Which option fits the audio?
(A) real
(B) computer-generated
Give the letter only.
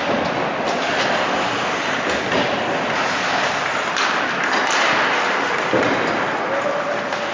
A